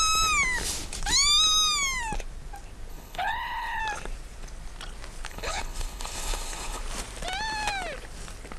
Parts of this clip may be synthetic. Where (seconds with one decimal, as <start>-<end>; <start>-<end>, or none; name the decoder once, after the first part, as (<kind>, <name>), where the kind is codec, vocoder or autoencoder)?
2.9-3.8 (codec, HILCodec); 5.3-6.8